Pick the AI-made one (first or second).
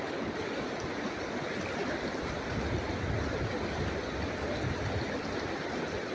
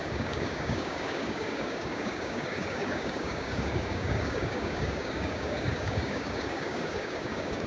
second